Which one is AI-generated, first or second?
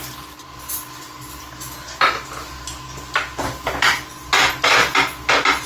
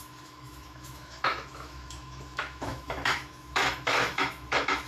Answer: second